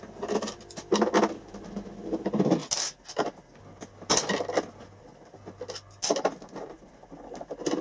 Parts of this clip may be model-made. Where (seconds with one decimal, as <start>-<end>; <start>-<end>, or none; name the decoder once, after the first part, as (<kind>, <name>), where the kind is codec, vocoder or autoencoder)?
none